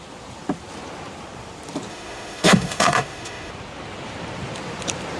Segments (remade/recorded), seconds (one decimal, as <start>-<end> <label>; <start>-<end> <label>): 0.0-1.9 recorded; 1.9-3.5 remade; 3.5-5.2 recorded